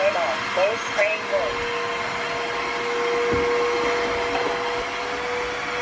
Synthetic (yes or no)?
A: no